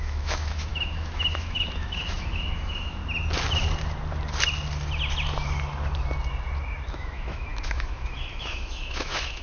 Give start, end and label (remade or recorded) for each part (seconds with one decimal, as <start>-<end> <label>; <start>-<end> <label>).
0.0-3.0 remade; 3.0-6.9 recorded; 6.9-9.4 remade